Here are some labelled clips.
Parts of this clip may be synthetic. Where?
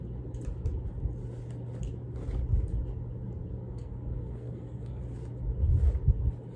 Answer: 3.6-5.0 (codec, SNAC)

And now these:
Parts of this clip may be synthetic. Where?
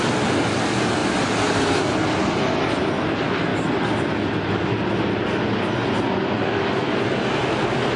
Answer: none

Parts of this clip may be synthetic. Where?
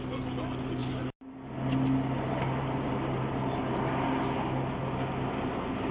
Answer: none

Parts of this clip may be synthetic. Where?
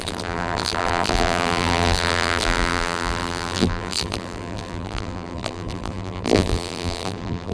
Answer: 0.0-7.5 (vocoder, BigVGAN v2)